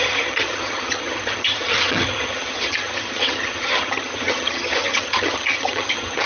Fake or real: fake